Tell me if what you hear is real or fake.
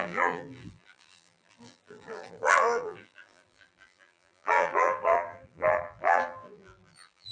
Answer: fake